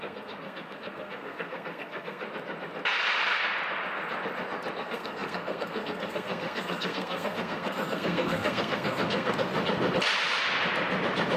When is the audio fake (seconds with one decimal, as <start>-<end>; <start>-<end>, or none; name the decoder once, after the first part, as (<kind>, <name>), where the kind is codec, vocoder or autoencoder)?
0.0-2.2 (codec, SNAC); 4.8-9.5